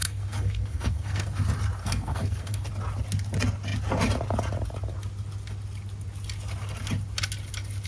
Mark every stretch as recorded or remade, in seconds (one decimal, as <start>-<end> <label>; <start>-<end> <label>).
0.0-1.4 remade; 1.4-1.8 recorded; 1.8-2.7 remade; 2.7-7.9 recorded